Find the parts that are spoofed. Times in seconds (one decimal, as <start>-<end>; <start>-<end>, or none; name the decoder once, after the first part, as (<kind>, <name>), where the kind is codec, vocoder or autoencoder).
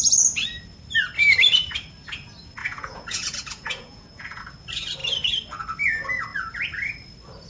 2.6-4.4 (vocoder, Vocos)